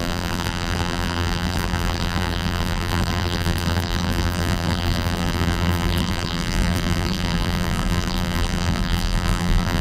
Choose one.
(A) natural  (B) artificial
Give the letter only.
B